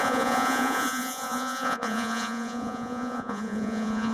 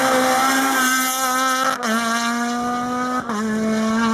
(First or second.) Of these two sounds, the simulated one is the first